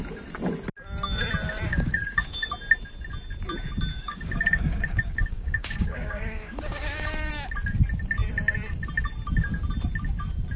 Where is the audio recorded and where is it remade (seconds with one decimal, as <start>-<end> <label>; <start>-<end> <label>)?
0.0-1.7 recorded; 1.7-2.5 remade; 2.5-3.9 recorded; 3.9-7.3 remade; 7.3-10.6 recorded

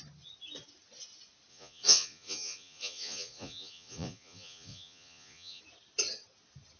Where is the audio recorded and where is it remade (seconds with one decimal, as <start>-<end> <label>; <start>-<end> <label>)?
0.0-1.5 recorded; 1.5-5.6 remade; 5.6-6.8 recorded

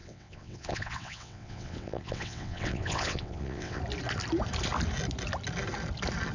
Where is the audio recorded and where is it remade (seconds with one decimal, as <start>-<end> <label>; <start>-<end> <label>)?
0.0-3.8 remade; 3.8-6.3 recorded